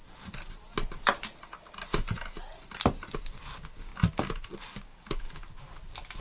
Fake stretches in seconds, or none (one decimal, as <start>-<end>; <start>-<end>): none